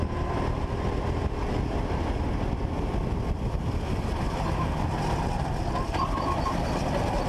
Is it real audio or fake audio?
real